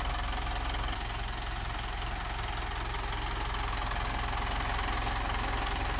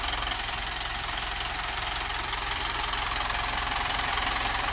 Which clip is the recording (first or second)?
first